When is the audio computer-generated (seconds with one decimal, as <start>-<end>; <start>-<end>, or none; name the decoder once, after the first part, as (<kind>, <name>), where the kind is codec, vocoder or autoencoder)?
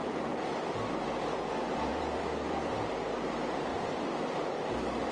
1.9-3.0 (vocoder, BigVGAN v2); 3.7-5.1